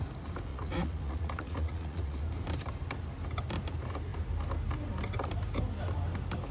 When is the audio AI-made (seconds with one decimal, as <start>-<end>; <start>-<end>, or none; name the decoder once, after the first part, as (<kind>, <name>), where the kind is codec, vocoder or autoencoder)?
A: 0.5-2.2 (vocoder, Vocos)